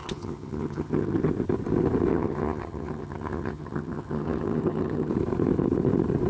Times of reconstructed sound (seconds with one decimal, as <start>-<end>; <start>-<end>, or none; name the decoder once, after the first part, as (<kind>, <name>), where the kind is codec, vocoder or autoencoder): 0.0-1.3 (vocoder, HiFi-GAN); 2.1-5.1